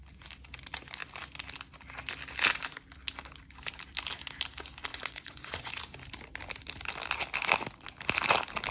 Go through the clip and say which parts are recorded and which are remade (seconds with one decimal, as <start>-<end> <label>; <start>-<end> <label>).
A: 0.0-4.9 recorded; 4.9-5.7 remade; 5.7-8.7 recorded